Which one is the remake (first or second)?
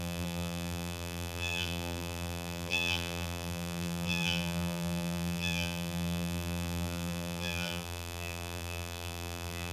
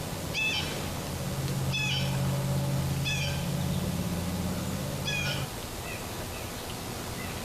first